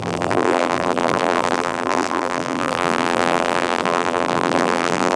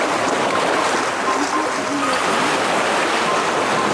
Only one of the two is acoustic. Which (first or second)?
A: second